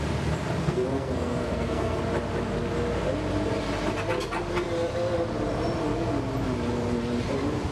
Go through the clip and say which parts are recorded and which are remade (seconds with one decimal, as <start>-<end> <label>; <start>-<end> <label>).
0.0-0.6 recorded; 0.6-2.0 remade; 2.0-7.7 recorded